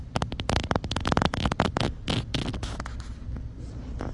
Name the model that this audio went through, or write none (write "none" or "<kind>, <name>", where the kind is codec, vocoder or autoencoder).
none